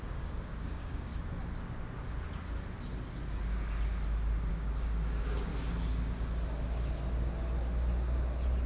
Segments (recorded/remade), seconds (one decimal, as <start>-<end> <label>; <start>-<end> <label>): 0.0-1.1 remade; 1.1-4.5 recorded; 4.5-5.5 remade; 5.5-8.7 recorded